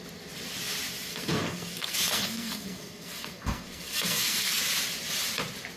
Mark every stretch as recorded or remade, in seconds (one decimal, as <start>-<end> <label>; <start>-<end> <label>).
0.0-1.1 recorded; 1.1-4.6 remade; 4.6-5.8 recorded